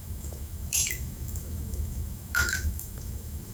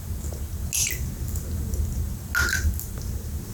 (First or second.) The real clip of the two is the second